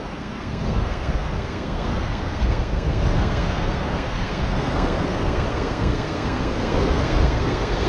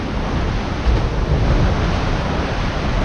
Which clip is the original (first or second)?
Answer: second